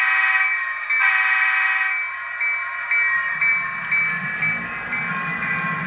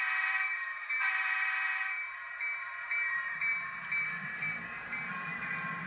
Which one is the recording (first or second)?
first